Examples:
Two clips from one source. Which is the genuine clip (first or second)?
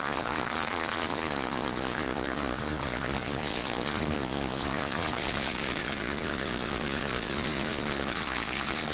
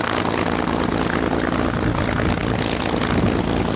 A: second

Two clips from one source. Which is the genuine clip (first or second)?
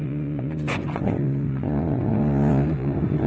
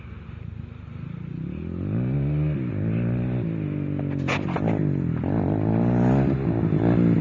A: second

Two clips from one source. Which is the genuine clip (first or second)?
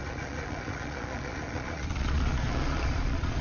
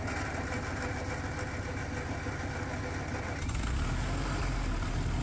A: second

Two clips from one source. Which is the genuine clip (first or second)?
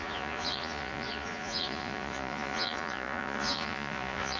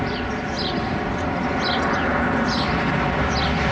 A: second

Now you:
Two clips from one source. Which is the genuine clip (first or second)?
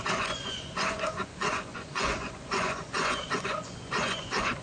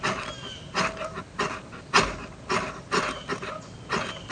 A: second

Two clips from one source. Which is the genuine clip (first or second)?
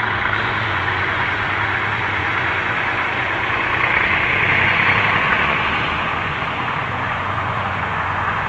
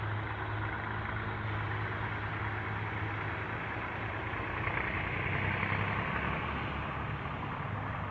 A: second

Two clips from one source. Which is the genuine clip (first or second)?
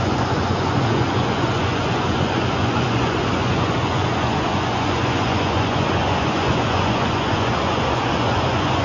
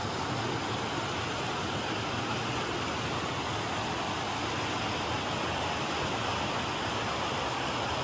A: second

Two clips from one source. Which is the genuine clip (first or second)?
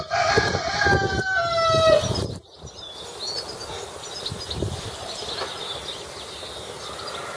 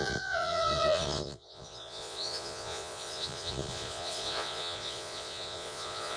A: first